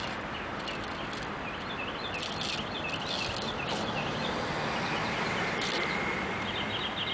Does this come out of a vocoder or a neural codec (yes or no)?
no